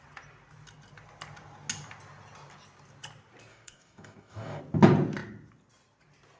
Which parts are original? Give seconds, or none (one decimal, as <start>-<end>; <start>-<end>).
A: 0.0-3.5; 4.6-6.4